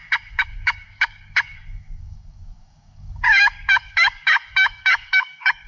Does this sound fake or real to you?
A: fake